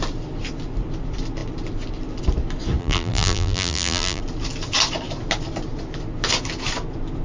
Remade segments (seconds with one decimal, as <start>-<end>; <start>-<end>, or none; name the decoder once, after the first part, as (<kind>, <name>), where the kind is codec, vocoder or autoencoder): 2.8-4.2 (vocoder, BigVGAN v2)